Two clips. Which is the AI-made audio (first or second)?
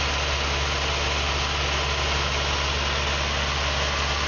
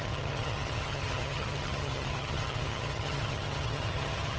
second